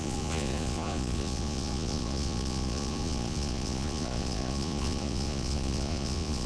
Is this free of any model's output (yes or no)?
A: no